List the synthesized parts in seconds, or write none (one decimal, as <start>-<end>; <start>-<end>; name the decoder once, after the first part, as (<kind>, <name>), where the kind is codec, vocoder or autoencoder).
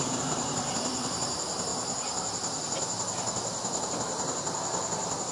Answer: 0.0-1.7 (vocoder, BigVGAN v2)